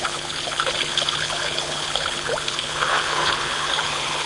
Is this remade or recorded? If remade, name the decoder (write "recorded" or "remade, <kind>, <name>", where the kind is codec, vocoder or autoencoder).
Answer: remade, codec, HILCodec